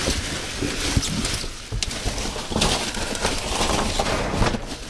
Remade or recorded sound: recorded